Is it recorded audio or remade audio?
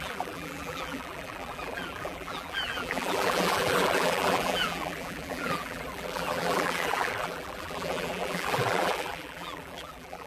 remade